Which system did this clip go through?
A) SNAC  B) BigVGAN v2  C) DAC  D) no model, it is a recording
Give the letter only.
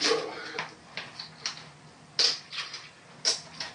D